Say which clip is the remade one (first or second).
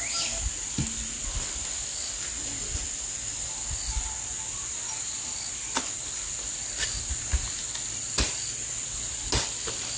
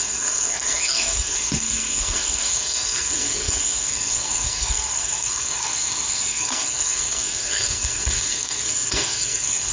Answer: second